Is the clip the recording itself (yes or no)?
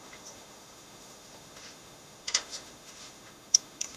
no